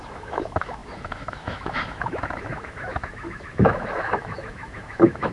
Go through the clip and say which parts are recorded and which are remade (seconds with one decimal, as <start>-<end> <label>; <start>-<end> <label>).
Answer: 0.0-5.3 remade